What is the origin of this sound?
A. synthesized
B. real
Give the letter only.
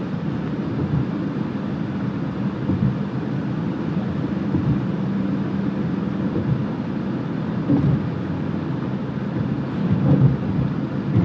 B